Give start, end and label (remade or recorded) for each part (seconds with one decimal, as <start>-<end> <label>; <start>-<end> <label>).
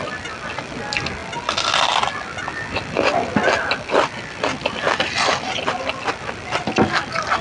0.0-7.4 recorded